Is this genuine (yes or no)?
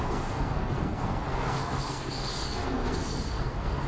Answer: no